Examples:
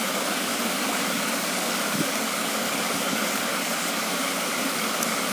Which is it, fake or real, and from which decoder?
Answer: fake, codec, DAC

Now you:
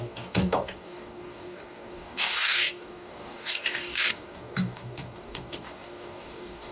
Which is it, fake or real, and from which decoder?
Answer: fake, codec, DAC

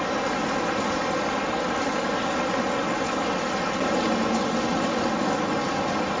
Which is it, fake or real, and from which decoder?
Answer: real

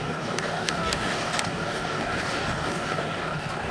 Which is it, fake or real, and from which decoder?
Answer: fake, codec, DAC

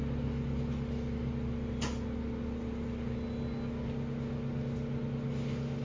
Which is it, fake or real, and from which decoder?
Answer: real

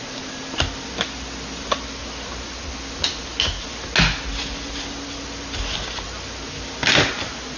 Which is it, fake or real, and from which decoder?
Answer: real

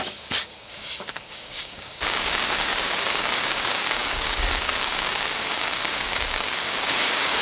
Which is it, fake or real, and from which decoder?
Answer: fake, codec, DAC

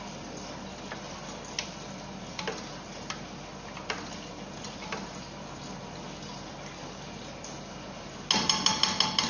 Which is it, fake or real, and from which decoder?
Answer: real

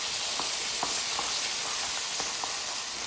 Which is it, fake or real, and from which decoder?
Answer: real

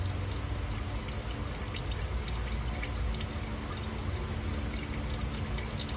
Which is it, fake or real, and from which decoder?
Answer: real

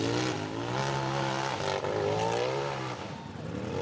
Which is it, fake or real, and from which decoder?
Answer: real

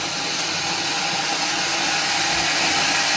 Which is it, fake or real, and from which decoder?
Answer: real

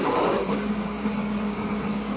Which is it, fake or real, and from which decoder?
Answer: fake, codec, DAC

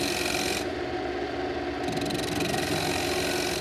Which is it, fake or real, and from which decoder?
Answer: real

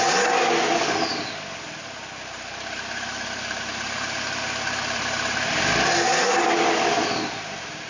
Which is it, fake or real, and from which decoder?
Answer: real